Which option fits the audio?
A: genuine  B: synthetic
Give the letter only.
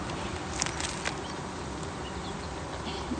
A